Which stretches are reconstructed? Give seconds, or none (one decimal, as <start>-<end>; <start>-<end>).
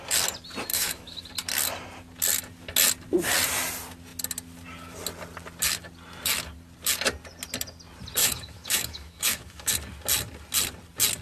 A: 0.7-1.2; 8.2-9.7